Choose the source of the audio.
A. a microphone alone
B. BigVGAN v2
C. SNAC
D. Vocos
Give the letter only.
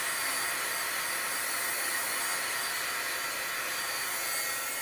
A